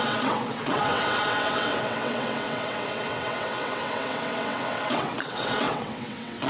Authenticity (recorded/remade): remade